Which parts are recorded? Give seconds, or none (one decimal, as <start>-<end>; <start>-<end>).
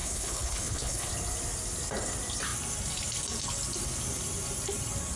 1.1-5.2